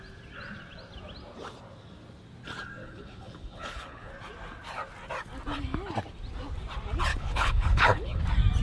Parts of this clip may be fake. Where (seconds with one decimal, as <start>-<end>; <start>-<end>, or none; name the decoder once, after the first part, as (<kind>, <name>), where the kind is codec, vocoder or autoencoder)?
2.8-4.1 (codec, HILCodec); 7.1-8.2

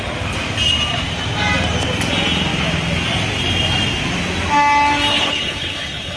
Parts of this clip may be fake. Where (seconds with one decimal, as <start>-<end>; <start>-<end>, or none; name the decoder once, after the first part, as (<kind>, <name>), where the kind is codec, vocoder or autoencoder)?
5.1-6.2 (codec, HILCodec)